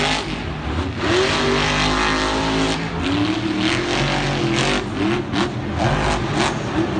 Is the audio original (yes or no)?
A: yes